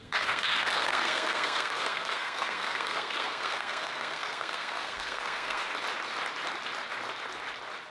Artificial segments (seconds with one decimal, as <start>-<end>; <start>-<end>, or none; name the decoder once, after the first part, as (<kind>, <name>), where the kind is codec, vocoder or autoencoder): 0.0-5.6 (codec, SNAC)